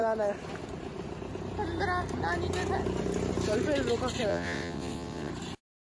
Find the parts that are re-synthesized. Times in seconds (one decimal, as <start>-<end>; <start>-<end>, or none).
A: 4.3-5.3